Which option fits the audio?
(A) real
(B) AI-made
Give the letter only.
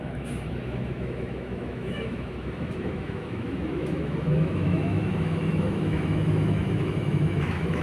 B